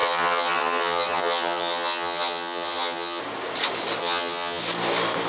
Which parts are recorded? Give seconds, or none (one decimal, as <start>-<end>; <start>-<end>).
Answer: 3.2-4.0; 4.6-5.3